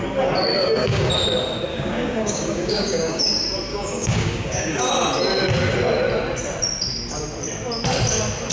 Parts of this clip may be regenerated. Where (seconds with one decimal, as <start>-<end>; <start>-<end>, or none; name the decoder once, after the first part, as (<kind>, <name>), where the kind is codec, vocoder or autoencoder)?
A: 0.5-1.1 (codec, DAC); 1.7-3.2; 3.7-4.9